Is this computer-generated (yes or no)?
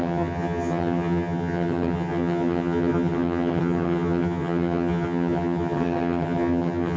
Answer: yes